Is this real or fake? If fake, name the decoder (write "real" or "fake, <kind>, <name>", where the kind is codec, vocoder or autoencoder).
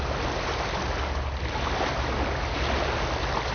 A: real